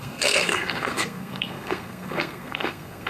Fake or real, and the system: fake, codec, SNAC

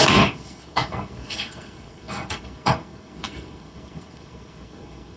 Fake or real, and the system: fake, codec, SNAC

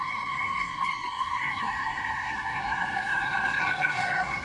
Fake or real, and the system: fake, codec, SNAC